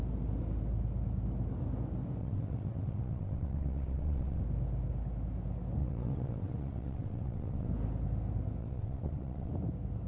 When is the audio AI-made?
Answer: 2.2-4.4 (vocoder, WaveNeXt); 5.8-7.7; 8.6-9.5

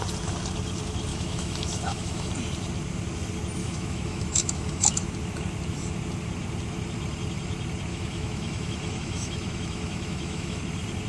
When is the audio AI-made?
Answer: 1.1-2.3 (autoencoder, DAC-VAE); 3.6-5.0; 7.9-10.6

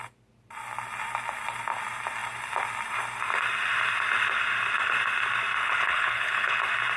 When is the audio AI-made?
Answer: 5.6-6.6 (codec, HILCodec)

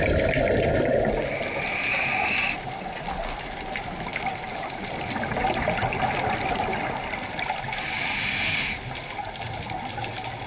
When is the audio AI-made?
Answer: none

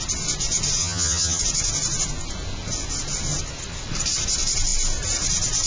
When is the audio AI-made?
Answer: 0.8-1.4 (vocoder, HiFi-GAN)